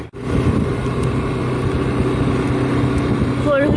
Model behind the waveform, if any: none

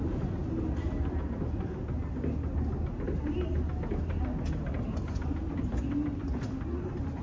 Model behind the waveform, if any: none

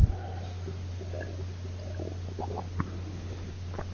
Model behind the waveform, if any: none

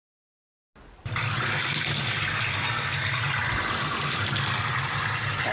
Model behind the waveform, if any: none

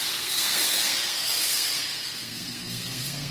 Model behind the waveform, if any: codec, SNAC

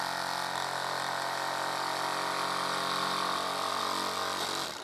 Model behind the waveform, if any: none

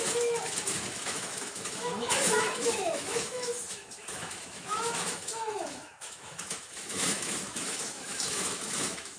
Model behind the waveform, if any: autoencoder, DAC-VAE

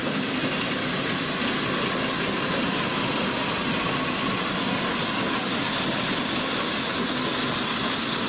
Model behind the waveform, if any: none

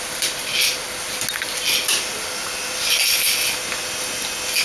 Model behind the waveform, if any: none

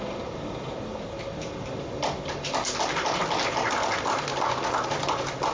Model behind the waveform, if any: none